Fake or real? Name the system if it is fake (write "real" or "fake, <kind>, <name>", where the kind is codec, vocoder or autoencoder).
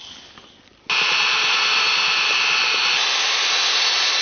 real